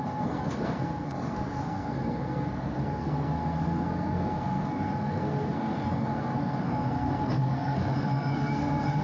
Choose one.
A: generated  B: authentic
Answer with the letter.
A